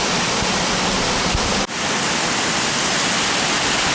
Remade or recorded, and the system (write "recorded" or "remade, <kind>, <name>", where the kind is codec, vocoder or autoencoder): recorded